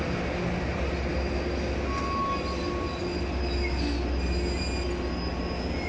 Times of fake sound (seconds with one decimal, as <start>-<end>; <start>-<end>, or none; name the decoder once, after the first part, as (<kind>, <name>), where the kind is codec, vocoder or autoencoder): none